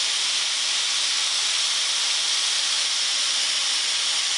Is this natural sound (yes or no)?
yes